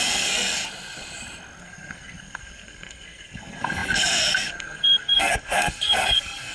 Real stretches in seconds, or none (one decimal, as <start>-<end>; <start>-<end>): 0.6-1.6